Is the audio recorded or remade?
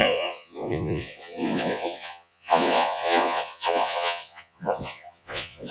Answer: remade